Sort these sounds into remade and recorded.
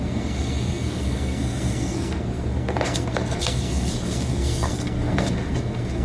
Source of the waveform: remade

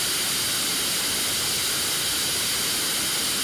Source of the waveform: recorded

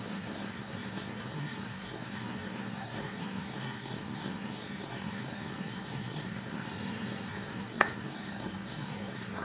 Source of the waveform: remade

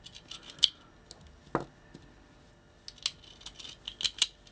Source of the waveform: recorded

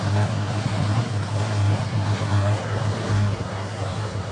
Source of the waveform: remade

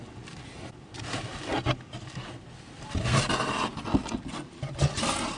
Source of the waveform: recorded